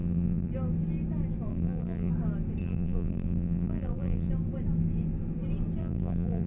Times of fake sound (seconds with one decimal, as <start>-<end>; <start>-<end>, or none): 0.0-0.5; 1.5-2.1; 2.6-4.3; 5.8-6.5